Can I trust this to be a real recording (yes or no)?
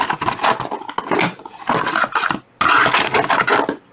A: yes